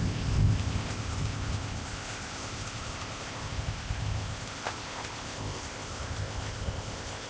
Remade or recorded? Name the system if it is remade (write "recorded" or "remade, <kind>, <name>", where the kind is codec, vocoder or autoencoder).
remade, codec, ZipCodec